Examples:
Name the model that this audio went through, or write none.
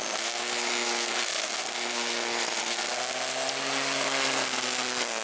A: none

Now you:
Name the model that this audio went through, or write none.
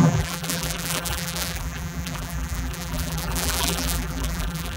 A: vocoder, BigVGAN v2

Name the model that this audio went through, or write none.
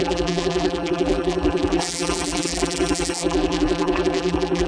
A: vocoder, BigVGAN v2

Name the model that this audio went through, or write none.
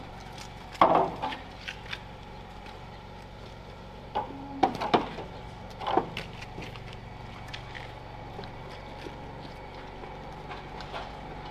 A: none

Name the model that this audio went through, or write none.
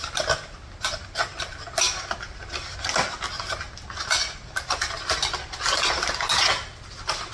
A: none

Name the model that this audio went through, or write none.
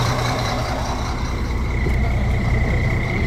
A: vocoder, BigVGAN v2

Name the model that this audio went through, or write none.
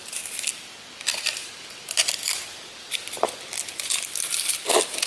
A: vocoder, BigVGAN v2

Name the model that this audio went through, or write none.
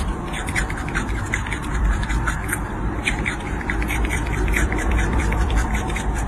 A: vocoder, BigVGAN v2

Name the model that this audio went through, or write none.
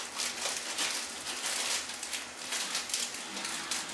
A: none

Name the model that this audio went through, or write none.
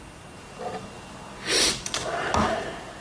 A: none